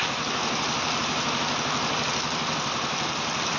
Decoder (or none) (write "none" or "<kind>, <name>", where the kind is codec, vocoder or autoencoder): none